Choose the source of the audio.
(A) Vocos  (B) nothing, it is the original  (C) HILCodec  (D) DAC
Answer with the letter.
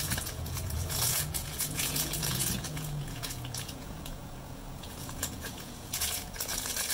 A